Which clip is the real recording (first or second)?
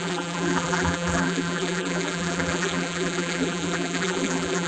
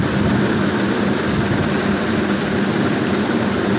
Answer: second